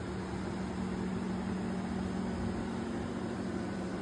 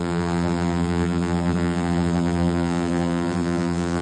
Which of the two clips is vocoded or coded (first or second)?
second